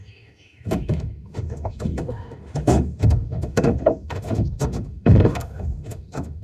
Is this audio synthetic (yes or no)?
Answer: yes